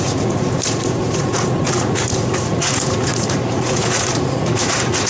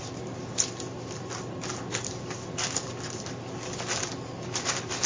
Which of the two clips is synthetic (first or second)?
first